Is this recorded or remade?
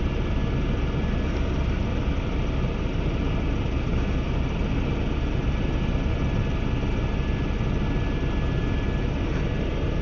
recorded